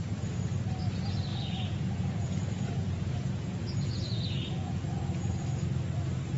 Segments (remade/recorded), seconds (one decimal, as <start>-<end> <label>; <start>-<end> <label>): 0.0-1.3 recorded; 1.3-5.1 remade; 5.1-6.4 recorded